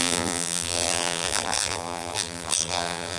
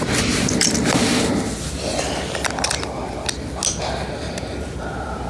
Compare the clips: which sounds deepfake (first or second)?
first